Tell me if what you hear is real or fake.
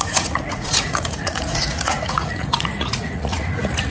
fake